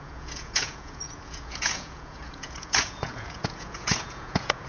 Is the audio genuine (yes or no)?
no